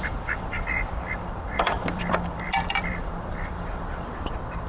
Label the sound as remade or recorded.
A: remade